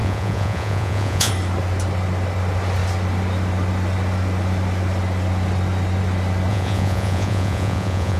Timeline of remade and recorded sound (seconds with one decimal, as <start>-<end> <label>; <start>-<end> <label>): 0.0-1.3 remade; 1.3-6.5 recorded; 6.5-8.2 remade